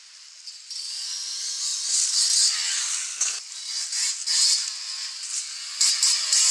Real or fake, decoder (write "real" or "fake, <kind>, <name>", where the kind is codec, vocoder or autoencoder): real